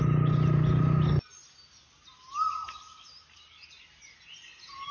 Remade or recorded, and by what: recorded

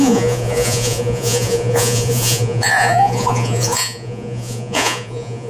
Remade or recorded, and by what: remade, vocoder, Vocos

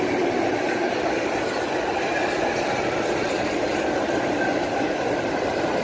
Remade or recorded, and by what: recorded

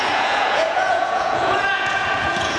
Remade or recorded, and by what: remade, vocoder, Vocos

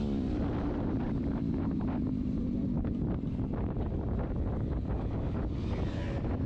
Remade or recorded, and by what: remade, vocoder, BigVGAN v2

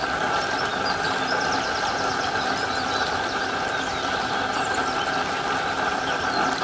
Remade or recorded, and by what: recorded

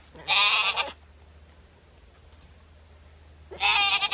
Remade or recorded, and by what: recorded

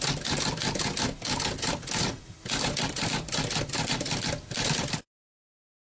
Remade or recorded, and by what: recorded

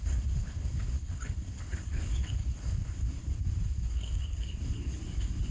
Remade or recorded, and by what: remade, codec, HILCodec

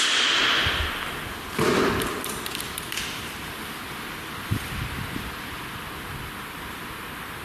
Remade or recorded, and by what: recorded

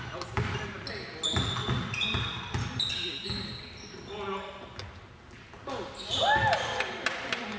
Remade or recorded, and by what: recorded